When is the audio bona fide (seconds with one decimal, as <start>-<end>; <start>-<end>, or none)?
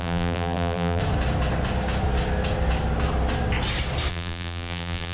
1.0-4.1